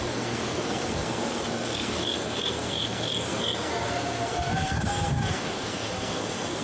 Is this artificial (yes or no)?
yes